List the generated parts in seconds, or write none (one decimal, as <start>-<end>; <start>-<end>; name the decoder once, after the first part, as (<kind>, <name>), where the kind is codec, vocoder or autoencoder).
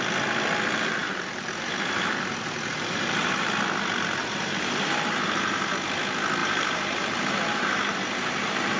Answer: 1.0-3.5 (vocoder, BigVGAN v2); 4.2-5.7; 6.4-8.8